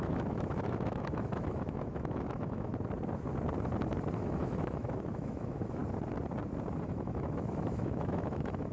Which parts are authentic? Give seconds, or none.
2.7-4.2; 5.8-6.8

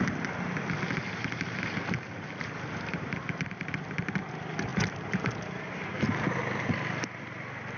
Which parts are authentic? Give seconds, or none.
0.0-7.8

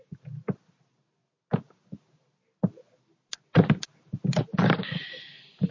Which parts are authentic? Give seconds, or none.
0.0-5.7

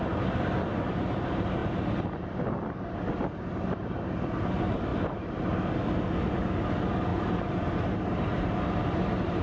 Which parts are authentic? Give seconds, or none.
0.0-7.1; 8.6-9.4

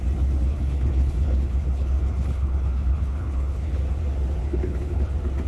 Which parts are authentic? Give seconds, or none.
0.0-0.5; 3.8-4.4; 5.1-5.5

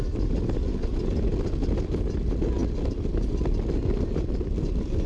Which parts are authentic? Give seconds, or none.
0.0-5.1

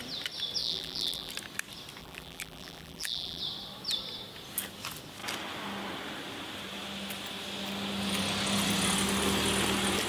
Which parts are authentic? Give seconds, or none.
0.0-0.6; 1.3-2.0; 3.4-10.1